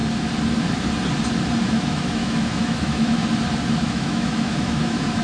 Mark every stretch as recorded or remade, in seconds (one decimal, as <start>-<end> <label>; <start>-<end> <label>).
0.0-1.7 recorded; 1.7-3.2 remade; 3.2-3.7 recorded; 3.7-5.2 remade